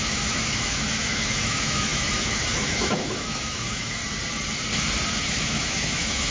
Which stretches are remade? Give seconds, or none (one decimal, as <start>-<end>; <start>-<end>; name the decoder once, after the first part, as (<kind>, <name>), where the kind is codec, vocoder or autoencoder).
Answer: 0.0-4.0 (autoencoder, DAC-VAE); 5.1-6.3